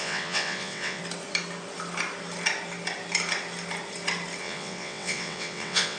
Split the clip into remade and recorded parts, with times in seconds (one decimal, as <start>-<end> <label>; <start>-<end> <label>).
0.0-1.0 remade; 1.0-4.4 recorded; 4.4-6.0 remade

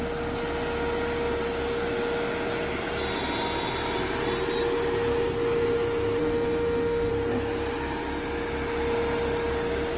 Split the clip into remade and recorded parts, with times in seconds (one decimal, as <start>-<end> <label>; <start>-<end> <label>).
0.0-6.2 recorded; 6.2-7.1 remade; 7.1-10.0 recorded

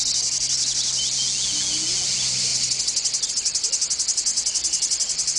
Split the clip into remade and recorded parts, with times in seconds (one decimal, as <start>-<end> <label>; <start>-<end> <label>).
0.0-4.3 recorded; 4.3-5.4 remade

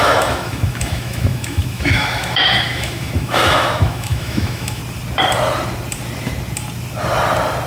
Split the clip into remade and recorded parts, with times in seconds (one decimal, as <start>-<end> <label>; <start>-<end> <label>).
0.0-4.8 remade; 4.8-7.7 recorded

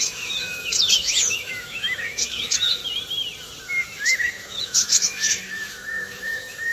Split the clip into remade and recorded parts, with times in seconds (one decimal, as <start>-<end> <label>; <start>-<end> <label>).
0.0-2.8 remade; 2.8-3.6 recorded; 3.6-6.7 remade

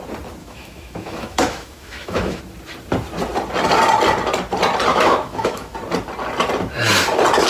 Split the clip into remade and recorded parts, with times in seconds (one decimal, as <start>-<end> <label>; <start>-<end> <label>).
0.0-0.4 recorded; 0.4-2.4 remade; 2.4-4.9 recorded; 4.9-5.7 remade; 5.7-7.5 recorded

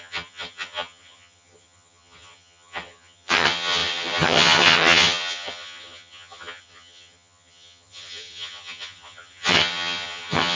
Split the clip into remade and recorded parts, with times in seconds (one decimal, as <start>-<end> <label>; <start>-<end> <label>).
0.0-10.5 remade

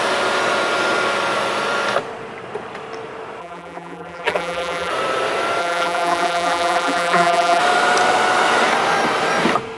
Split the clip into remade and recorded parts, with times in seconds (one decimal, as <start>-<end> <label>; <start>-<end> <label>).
0.0-3.4 recorded; 3.4-4.9 remade; 4.9-5.6 recorded; 5.6-7.6 remade; 7.6-9.8 recorded